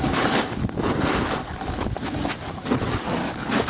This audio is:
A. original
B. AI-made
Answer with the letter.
A